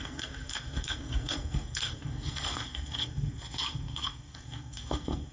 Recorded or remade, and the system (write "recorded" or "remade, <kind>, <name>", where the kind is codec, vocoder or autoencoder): remade, codec, SNAC